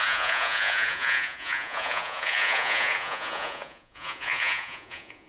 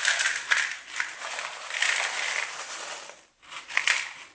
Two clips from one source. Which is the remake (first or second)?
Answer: first